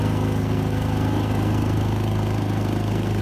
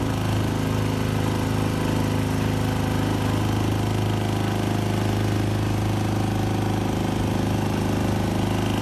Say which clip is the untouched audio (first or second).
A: second